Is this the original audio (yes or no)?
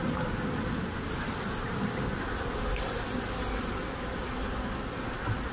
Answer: yes